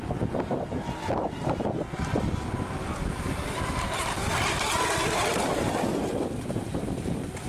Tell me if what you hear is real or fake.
real